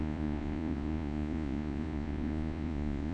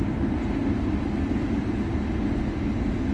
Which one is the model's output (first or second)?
first